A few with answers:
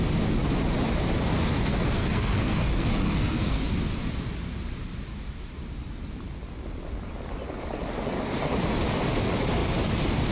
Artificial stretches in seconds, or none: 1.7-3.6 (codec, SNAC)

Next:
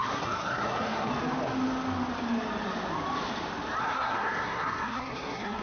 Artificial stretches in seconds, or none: 0.0-1.1 (codec, SNAC); 3.8-5.6